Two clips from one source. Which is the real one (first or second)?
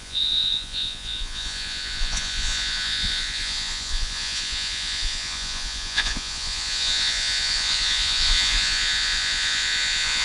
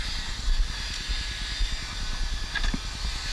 second